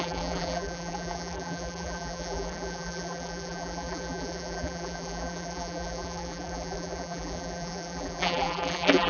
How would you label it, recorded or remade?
remade